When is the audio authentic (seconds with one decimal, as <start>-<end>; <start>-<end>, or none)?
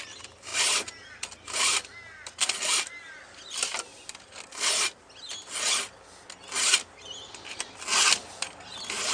0.0-9.1